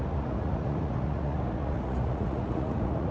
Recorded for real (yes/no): no